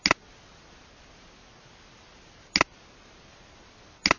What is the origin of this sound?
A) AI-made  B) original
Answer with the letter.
B